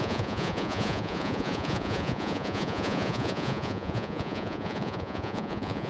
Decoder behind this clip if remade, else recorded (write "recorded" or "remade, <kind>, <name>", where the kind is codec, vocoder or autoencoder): remade, vocoder, Vocos